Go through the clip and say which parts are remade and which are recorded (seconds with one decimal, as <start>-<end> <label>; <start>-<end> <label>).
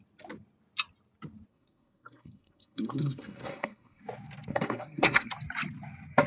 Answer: 0.0-1.5 recorded; 1.5-4.0 remade; 4.0-4.5 recorded; 4.5-5.3 remade; 5.3-6.3 recorded